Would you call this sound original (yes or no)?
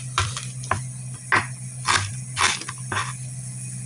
yes